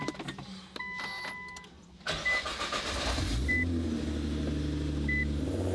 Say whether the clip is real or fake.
real